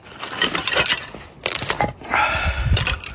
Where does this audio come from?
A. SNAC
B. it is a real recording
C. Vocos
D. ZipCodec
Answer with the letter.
B